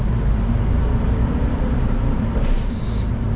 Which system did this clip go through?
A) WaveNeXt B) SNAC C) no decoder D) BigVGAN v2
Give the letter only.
D